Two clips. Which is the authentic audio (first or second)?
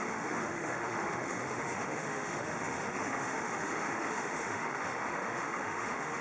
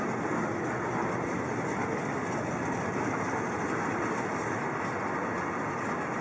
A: second